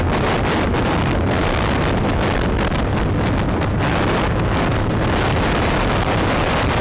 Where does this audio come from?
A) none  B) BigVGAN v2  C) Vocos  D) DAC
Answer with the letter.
A